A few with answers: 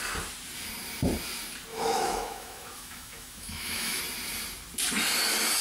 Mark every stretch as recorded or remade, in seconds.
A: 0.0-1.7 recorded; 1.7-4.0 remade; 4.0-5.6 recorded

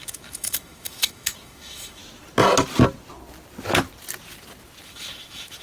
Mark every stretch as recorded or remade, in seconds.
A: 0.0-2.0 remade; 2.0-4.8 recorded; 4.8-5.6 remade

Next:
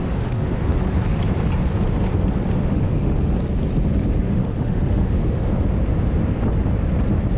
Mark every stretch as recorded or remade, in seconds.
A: 0.0-0.7 remade; 0.7-2.6 recorded; 2.6-3.4 remade; 3.4-4.2 recorded; 4.2-5.5 remade; 5.5-7.4 recorded